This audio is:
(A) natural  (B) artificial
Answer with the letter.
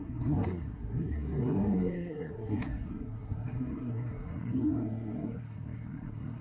B